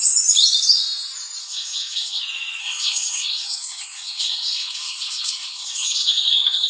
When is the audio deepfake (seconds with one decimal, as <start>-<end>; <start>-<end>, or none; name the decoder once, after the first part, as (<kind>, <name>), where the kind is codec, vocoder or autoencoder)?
1.4-2.2 (codec, SNAC); 2.6-6.7